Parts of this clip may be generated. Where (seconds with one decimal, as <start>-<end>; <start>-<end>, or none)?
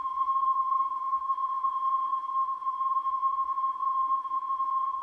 0.0-5.0